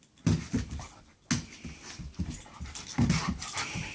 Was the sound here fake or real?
real